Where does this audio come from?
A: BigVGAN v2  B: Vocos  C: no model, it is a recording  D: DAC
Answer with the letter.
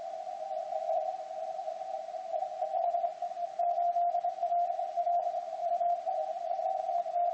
C